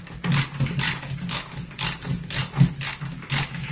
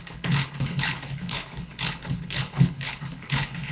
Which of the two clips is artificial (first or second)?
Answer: second